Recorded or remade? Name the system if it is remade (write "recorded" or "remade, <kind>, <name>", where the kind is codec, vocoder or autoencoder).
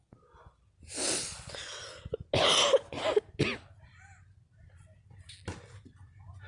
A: recorded